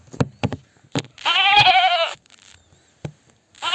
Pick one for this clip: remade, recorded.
recorded